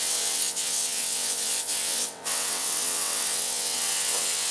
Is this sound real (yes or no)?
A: no